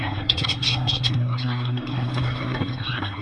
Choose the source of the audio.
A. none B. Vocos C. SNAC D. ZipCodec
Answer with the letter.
C